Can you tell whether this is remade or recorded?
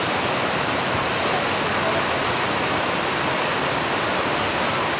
recorded